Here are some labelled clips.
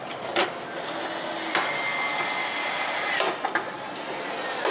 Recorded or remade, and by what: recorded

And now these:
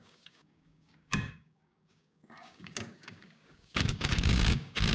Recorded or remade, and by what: remade, codec, DAC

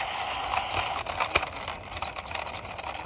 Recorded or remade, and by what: recorded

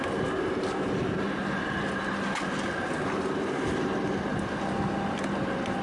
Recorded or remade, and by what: recorded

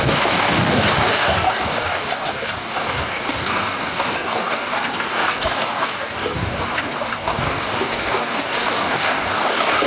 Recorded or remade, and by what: remade, codec, DAC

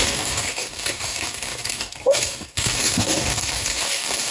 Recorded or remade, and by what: remade, codec, DAC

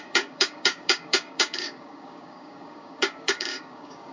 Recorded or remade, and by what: remade, codec, DAC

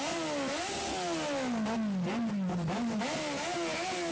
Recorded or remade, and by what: recorded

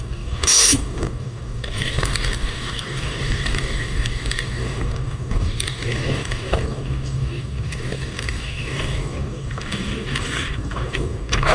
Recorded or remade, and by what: remade, codec, DAC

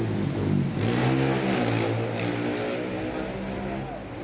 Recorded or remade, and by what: recorded